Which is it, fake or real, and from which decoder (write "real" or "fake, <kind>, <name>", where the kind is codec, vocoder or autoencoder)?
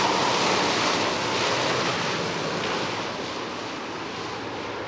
real